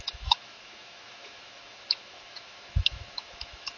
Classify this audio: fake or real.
fake